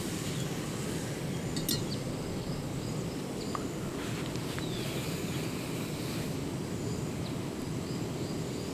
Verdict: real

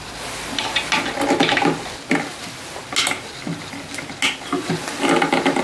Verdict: real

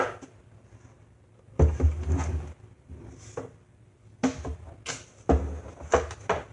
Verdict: real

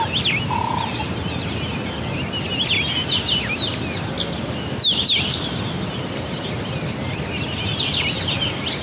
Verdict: real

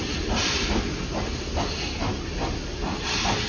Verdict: real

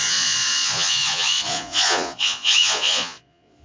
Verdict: fake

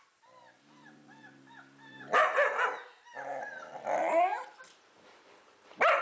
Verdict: real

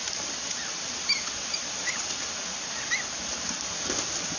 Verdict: real